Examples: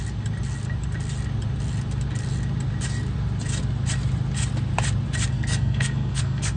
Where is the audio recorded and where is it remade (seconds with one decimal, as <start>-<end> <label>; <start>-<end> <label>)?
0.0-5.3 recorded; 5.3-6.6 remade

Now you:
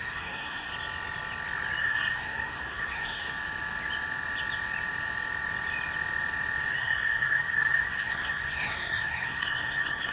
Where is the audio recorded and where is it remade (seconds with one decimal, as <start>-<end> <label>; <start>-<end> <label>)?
0.0-0.7 remade; 0.7-1.8 recorded; 1.8-3.3 remade; 3.3-6.7 recorded; 6.7-10.1 remade

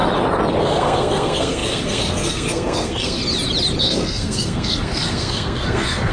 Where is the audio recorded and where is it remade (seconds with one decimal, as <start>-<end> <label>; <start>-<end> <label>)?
0.0-0.6 recorded; 0.6-3.2 remade; 3.2-3.8 recorded; 3.8-6.1 remade

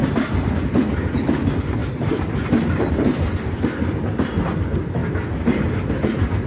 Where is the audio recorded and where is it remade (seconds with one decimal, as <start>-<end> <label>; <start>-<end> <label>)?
0.0-0.8 remade; 0.8-1.8 recorded; 1.8-2.9 remade; 2.9-5.0 recorded; 5.0-6.5 remade